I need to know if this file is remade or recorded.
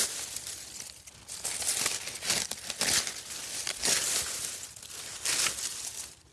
recorded